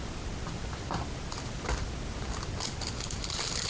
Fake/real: real